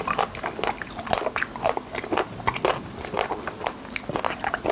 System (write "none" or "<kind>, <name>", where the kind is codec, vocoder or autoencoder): none